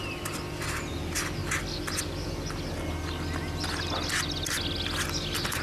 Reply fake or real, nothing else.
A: real